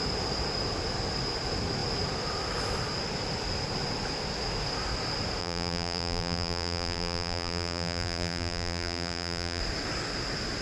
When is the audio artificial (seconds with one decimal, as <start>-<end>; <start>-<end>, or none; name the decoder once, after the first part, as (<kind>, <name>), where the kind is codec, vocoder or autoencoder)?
5.4-9.6 (vocoder, BigVGAN v2)

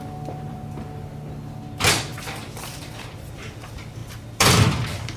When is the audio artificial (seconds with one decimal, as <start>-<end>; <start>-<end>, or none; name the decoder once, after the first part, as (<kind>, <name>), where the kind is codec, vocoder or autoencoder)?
0.0-5.2 (vocoder, BigVGAN v2)

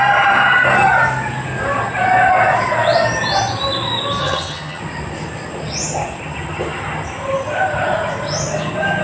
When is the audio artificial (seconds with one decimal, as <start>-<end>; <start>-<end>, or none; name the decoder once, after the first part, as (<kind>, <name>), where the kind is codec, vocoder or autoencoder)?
4.2-4.8 (vocoder, HiFi-GAN)

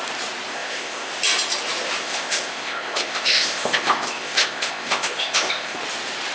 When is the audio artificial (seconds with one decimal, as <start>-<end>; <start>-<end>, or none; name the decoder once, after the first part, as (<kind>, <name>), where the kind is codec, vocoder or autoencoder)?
0.5-1.1 (codec, ZipCodec); 2.0-5.8

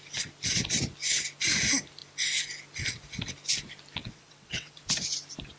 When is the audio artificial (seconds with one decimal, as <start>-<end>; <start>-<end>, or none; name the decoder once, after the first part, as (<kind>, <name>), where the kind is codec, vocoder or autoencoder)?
4.0-4.8 (vocoder, WaveNeXt)